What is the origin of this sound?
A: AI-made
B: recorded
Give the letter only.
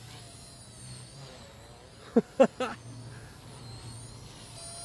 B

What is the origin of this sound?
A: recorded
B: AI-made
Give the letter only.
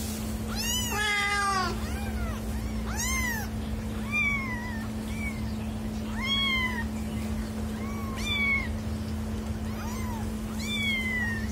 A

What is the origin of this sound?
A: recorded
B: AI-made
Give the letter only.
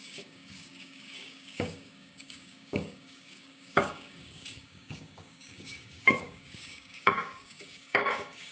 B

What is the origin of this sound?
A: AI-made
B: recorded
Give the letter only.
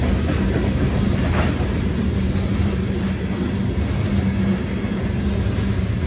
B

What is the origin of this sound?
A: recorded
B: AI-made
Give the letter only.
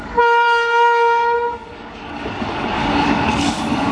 B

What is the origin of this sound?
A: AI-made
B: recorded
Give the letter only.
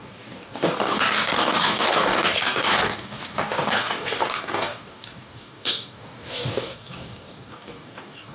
A